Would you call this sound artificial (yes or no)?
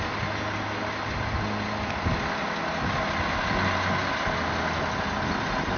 no